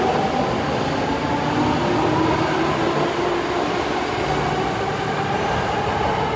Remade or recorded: recorded